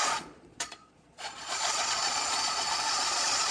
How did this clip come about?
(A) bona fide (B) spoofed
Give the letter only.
B